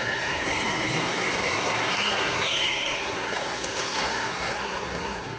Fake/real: fake